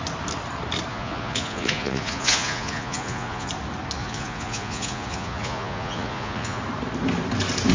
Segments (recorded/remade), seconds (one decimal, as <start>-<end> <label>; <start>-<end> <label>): 0.0-0.9 recorded; 0.9-3.5 remade; 3.5-4.0 recorded; 4.0-6.6 remade; 6.6-7.7 recorded